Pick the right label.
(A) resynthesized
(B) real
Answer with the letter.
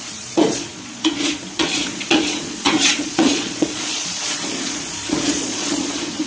A